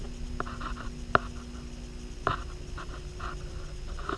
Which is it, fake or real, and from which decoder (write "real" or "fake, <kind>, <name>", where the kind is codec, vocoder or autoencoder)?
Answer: real